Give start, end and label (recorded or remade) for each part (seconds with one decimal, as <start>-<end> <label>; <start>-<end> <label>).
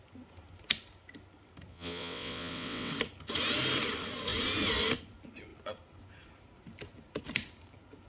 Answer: 0.0-1.7 recorded; 1.7-2.9 remade; 2.9-8.1 recorded